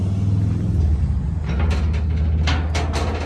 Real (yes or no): yes